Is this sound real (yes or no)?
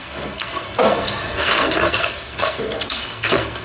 no